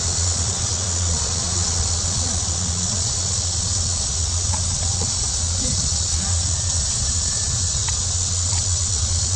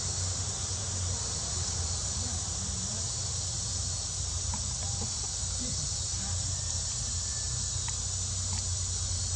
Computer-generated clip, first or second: first